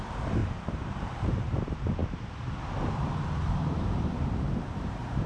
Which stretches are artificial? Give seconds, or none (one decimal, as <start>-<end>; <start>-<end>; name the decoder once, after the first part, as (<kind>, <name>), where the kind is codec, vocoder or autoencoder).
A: 0.0-2.0 (vocoder, BigVGAN v2); 2.9-5.3